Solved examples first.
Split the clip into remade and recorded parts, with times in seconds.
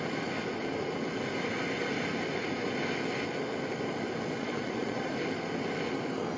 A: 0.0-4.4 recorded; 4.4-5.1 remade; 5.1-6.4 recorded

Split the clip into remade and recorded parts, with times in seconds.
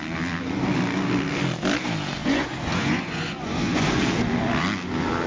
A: 0.0-2.2 recorded; 2.2-4.0 remade; 4.0-5.3 recorded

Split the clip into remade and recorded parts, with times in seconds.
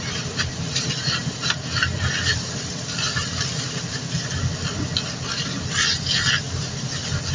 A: 0.0-7.3 recorded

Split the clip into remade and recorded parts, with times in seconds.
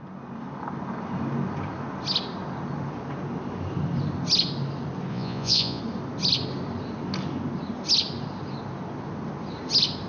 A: 0.0-5.1 recorded; 5.1-5.8 remade; 5.8-10.1 recorded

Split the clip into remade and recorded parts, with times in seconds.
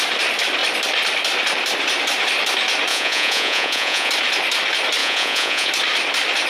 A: 0.0-2.9 recorded; 2.9-4.1 remade; 4.1-5.0 recorded; 5.0-5.7 remade; 5.7-6.5 recorded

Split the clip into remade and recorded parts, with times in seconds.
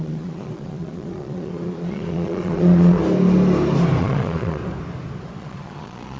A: 0.0-3.0 remade; 3.0-4.0 recorded; 4.0-4.6 remade; 4.6-5.4 recorded; 5.4-6.2 remade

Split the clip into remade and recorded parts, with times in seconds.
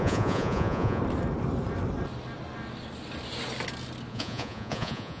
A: 0.0-1.0 remade; 1.0-4.1 recorded; 4.1-5.2 remade